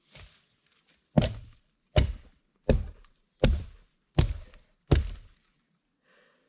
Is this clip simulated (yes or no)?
no